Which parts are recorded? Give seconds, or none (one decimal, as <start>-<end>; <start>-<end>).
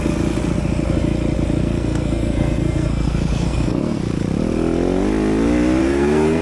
0.0-1.6; 4.0-5.8